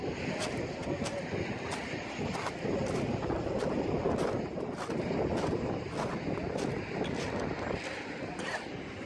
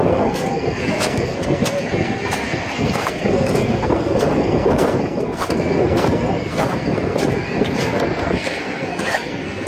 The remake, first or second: second